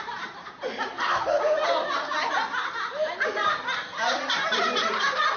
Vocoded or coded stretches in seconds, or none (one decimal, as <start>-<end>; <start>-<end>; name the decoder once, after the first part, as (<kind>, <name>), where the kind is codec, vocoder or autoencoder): 0.0-1.6 (vocoder, BigVGAN v2); 4.8-5.4